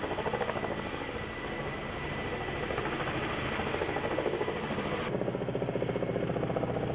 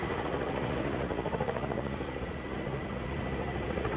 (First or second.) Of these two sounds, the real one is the first